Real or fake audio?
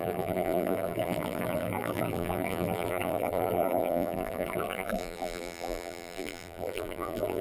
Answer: fake